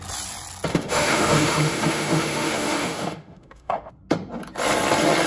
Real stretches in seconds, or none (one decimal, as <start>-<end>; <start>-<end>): 0.0-0.7; 3.9-5.3